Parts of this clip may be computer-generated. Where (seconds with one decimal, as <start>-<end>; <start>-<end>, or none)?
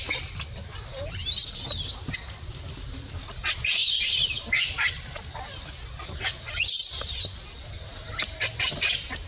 3.8-4.5